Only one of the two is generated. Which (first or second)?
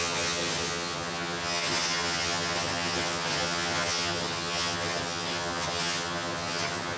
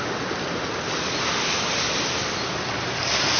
first